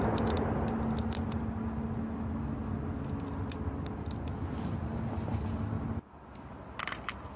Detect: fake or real real